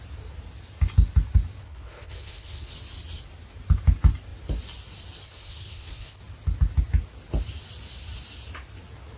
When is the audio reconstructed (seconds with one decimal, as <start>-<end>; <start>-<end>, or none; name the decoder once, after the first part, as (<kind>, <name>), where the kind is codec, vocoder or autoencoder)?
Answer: 1.6-2.7 (codec, HILCodec); 5.2-6.2